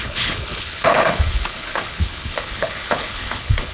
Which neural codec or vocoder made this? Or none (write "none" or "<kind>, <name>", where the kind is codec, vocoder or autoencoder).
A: codec, HILCodec